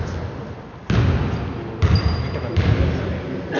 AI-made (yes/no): no